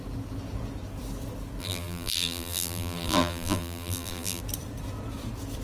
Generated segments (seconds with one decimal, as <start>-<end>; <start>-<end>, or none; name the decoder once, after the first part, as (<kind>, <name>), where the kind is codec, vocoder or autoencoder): 1.6-4.4 (vocoder, BigVGAN v2)